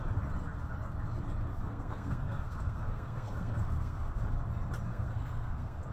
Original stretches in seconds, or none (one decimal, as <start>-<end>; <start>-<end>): 0.0-1.5; 4.2-4.9